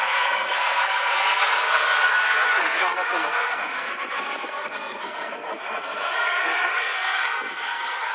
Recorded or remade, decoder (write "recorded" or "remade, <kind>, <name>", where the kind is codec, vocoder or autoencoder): remade, codec, SNAC